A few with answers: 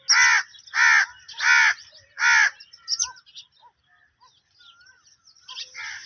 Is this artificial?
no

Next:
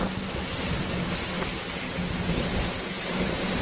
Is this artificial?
no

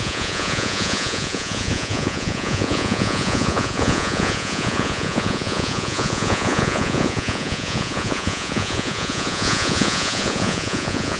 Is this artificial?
yes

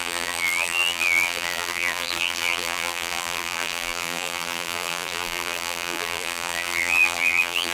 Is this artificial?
yes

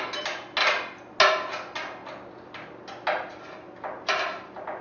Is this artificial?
no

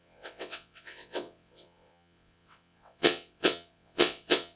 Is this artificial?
yes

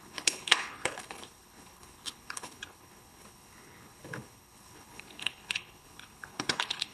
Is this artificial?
yes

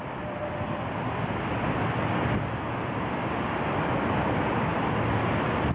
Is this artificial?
no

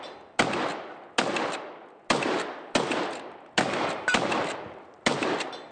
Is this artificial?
no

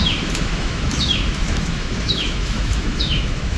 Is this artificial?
yes